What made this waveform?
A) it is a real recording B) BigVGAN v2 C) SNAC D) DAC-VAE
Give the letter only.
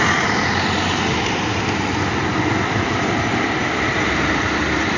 B